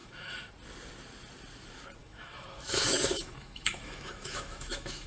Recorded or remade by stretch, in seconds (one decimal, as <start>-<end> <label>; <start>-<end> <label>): 0.0-0.5 remade; 0.5-2.0 recorded; 2.0-5.1 remade

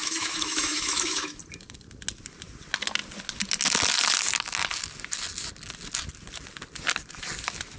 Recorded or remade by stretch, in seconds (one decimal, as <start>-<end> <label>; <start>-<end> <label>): 0.0-1.4 remade; 1.4-7.8 recorded

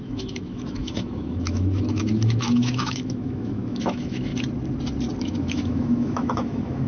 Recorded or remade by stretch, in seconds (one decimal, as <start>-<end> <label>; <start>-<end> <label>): 0.0-4.3 remade; 4.3-5.2 recorded; 5.2-6.9 remade

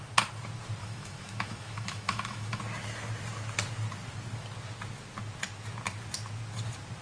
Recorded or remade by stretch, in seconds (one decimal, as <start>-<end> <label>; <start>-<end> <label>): 0.0-0.8 recorded; 0.8-2.6 remade; 2.6-7.0 recorded

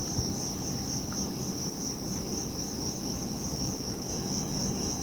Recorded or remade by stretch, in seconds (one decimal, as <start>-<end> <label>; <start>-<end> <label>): 0.0-3.0 recorded; 3.0-5.0 remade

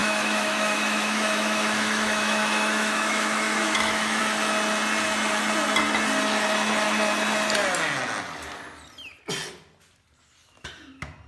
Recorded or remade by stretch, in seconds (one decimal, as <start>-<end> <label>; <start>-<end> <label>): 0.0-4.2 remade; 4.2-11.3 recorded